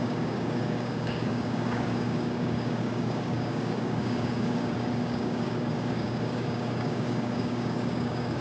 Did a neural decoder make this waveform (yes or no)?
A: yes